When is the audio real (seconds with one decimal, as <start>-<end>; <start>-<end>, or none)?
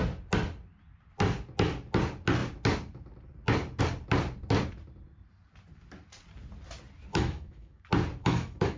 0.0-7.1; 7.8-8.2